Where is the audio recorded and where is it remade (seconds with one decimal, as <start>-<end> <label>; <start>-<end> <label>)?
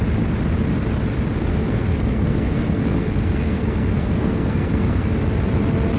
0.0-1.5 recorded; 1.5-5.1 remade; 5.1-6.0 recorded